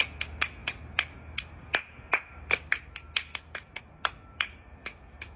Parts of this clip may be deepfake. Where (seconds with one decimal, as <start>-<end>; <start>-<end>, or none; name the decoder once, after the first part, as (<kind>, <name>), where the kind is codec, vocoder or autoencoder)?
none